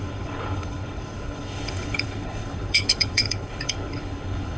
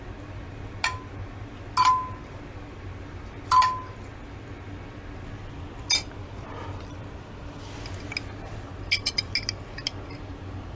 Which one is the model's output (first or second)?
first